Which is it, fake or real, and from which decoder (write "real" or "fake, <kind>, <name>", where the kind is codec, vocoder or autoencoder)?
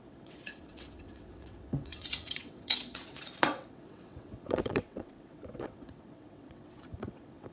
fake, vocoder, WaveNeXt